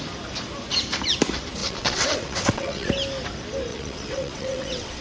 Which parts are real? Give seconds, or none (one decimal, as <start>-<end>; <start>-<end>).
0.0-1.6; 2.9-3.7